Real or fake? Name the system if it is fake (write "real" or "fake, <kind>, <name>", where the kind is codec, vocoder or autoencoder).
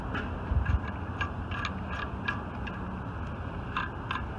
real